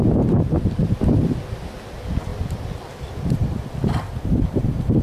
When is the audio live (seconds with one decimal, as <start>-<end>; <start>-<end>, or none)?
0.8-1.6; 2.3-4.1